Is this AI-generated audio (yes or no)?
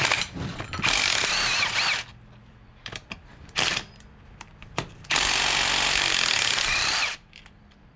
yes